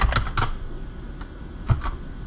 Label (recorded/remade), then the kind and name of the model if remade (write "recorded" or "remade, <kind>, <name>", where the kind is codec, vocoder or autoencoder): recorded